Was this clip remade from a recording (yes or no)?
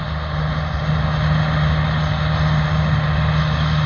no